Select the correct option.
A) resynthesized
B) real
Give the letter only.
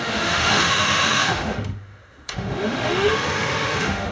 A